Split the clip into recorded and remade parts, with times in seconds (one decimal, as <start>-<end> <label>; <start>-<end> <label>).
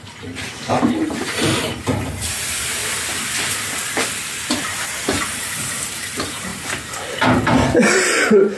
0.0-2.8 remade; 2.8-4.6 recorded; 4.6-6.5 remade; 6.5-8.6 recorded